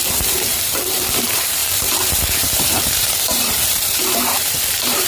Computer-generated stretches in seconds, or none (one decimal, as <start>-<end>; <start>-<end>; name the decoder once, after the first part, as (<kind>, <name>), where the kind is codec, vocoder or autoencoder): 0.0-5.1 (vocoder, BigVGAN v2)